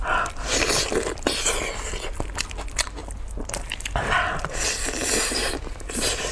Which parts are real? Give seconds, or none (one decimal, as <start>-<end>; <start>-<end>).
0.0-6.3

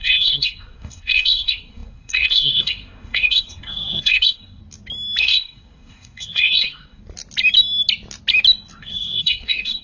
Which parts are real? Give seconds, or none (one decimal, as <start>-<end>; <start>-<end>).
4.6-5.2; 7.0-8.8

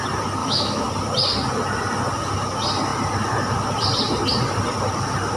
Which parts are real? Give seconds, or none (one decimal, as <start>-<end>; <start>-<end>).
0.0-0.4; 0.9-5.4

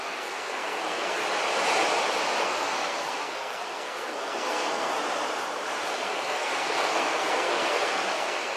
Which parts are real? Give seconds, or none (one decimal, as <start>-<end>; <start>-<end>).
1.2-2.4; 4.9-5.9

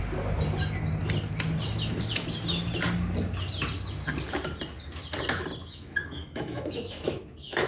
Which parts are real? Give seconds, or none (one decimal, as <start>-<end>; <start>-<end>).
0.0-5.6

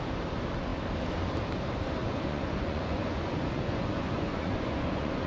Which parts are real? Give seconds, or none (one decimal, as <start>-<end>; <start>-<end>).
0.0-2.0